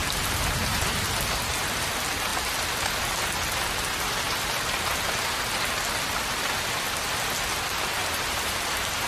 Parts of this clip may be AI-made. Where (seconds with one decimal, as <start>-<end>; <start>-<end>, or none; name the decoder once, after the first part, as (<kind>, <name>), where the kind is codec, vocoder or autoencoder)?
0.0-0.8 (vocoder, BigVGAN v2); 8.0-8.6